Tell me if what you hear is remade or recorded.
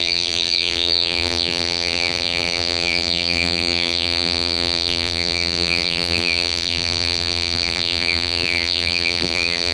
remade